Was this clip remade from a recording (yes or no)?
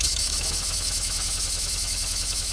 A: yes